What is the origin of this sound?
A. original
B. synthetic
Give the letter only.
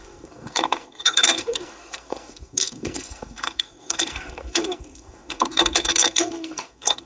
B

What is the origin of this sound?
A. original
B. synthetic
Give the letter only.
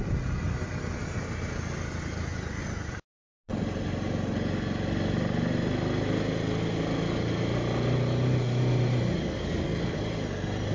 A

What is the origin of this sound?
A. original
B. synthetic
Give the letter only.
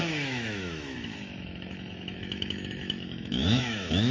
B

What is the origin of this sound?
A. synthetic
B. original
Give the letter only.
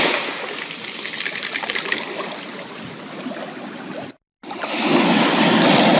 B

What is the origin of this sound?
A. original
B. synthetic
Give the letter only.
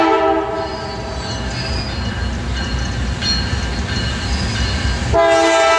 A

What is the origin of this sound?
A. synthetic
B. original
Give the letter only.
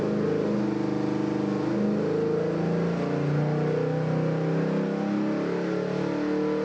B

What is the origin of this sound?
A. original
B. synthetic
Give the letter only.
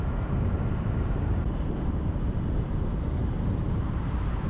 B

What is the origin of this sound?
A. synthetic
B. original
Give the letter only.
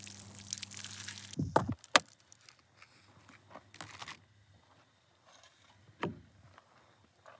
B